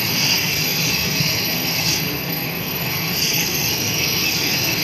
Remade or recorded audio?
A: remade